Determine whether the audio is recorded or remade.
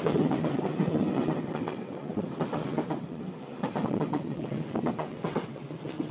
remade